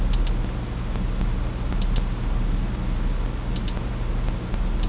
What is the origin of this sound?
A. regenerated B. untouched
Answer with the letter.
B